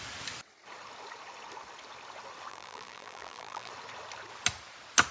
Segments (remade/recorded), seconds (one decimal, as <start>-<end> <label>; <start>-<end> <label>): 0.0-2.5 recorded; 2.5-3.7 remade; 3.7-5.1 recorded